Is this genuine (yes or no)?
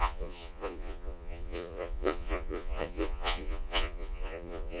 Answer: no